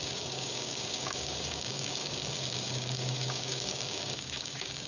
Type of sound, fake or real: fake